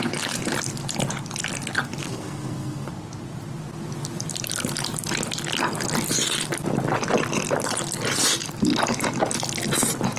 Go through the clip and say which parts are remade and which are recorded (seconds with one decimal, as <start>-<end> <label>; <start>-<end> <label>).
0.0-2.0 recorded; 2.0-2.9 remade; 2.9-10.2 recorded